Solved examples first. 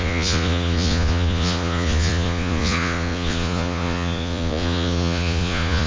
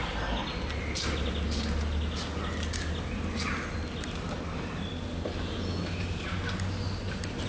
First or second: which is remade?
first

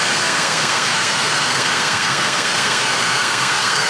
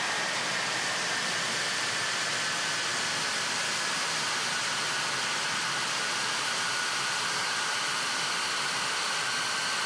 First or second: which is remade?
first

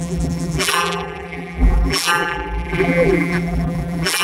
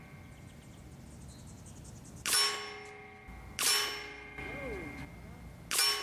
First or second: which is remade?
first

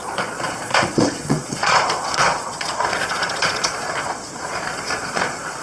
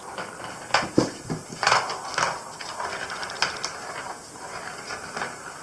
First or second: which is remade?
first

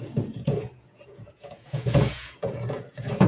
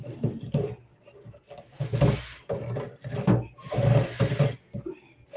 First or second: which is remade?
first